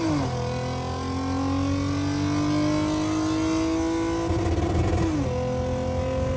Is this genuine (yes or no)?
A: yes